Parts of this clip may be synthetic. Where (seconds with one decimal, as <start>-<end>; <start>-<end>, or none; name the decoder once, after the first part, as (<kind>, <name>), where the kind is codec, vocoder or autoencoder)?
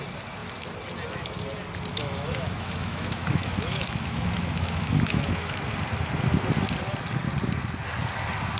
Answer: 1.9-5.6 (autoencoder, DAC-VAE)